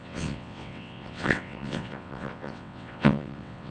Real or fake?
fake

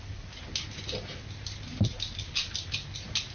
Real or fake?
real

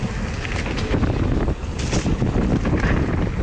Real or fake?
real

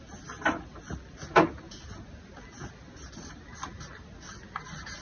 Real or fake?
real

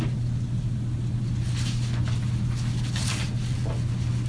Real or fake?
real